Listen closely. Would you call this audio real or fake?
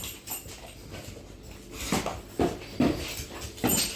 real